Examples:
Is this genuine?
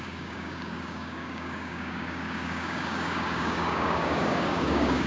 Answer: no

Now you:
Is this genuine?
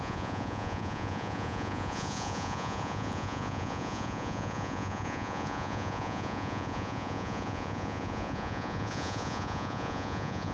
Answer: no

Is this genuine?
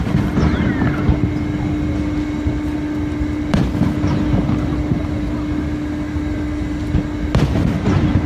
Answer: yes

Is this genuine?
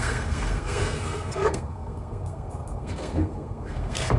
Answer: no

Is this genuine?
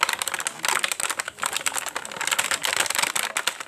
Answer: yes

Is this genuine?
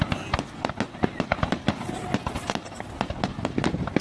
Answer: yes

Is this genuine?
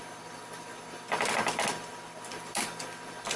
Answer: yes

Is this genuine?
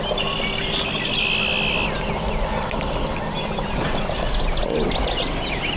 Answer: yes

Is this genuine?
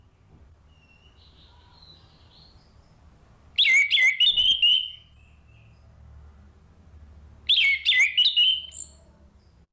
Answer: yes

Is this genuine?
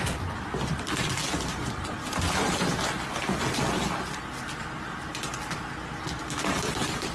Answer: yes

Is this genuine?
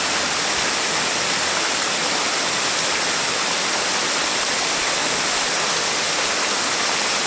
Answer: yes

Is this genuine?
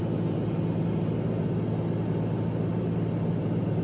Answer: yes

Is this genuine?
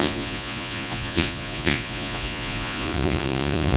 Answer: no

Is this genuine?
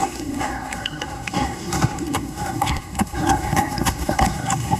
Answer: no